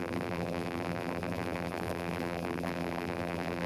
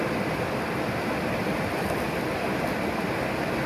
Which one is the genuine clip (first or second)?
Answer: second